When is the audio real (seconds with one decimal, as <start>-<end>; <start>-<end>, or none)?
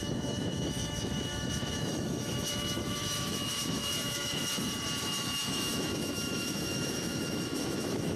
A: 4.4-5.0